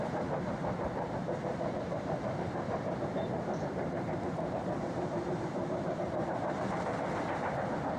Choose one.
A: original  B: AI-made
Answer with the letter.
B